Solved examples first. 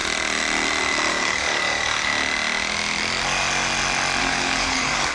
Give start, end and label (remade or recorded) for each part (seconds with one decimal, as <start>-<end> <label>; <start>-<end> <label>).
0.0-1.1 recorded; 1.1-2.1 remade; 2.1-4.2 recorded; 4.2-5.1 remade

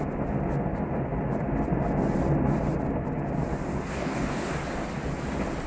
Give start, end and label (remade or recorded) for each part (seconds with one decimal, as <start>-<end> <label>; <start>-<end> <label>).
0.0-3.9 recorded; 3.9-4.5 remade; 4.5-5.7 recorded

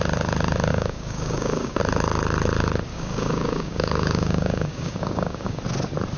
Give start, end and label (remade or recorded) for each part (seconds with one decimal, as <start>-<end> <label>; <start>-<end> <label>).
0.0-0.7 recorded; 0.7-1.8 remade; 1.8-2.9 recorded; 2.9-5.6 remade; 5.6-6.2 recorded